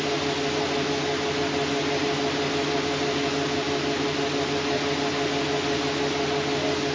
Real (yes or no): yes